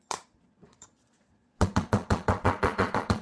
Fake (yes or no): yes